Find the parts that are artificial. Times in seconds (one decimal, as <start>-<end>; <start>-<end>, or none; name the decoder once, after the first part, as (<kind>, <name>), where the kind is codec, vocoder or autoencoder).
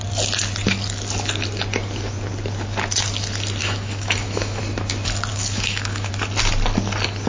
3.6-4.6 (autoencoder, DAC-VAE); 5.3-6.1